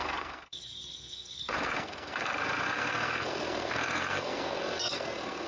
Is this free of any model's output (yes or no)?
no